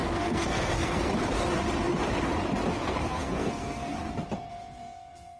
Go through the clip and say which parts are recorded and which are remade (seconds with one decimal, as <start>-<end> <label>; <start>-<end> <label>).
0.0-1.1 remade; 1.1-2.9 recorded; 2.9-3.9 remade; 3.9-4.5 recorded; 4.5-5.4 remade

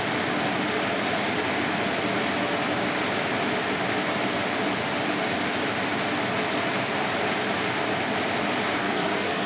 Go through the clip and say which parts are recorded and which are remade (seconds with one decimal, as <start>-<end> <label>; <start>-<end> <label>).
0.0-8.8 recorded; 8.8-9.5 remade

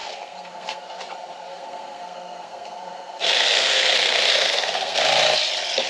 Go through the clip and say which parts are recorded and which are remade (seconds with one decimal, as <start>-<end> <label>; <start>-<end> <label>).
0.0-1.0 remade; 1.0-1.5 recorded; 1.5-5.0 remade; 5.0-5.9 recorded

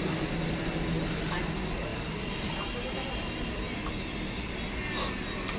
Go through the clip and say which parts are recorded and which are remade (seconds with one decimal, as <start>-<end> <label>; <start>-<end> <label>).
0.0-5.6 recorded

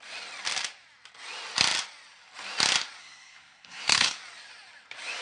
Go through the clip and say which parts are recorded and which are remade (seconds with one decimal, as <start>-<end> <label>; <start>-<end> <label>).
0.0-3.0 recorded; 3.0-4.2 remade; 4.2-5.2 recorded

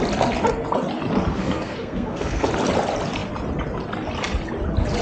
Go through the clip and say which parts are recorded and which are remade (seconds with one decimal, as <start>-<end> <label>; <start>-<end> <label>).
0.0-1.3 recorded; 1.3-2.5 remade; 2.5-5.0 recorded

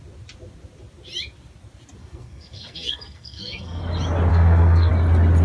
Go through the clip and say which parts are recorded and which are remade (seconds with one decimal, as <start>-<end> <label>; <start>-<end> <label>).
0.0-2.0 recorded; 2.0-3.8 remade; 3.8-4.3 recorded; 4.3-4.9 remade; 4.9-5.4 recorded

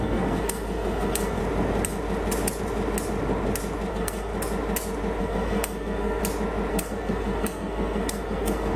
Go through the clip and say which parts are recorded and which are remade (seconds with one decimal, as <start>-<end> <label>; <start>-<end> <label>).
0.0-1.4 remade; 1.4-3.9 recorded; 3.9-4.3 remade; 4.3-5.2 recorded; 5.2-6.2 remade; 6.2-6.7 recorded; 6.7-8.8 remade